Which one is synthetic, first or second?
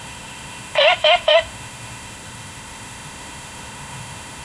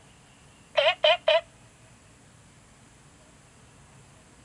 first